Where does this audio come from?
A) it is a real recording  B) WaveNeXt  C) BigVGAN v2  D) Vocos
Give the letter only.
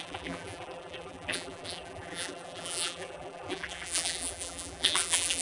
C